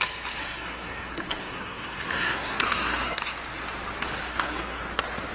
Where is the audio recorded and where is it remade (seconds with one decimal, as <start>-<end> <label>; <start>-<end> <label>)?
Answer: 0.0-0.4 recorded; 0.4-3.2 remade; 3.2-4.3 recorded; 4.3-4.8 remade; 4.8-5.3 recorded